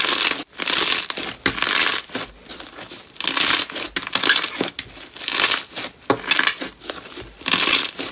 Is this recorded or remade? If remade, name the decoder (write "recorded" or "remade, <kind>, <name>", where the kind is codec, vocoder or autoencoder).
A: recorded